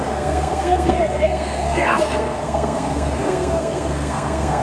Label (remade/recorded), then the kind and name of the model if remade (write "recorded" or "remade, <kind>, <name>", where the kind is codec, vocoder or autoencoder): remade, codec, SNAC